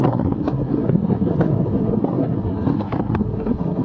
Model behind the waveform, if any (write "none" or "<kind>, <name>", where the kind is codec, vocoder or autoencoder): codec, SNAC